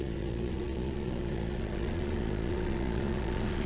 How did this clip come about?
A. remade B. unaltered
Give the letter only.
A